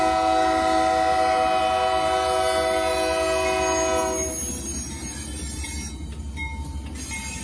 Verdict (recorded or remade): recorded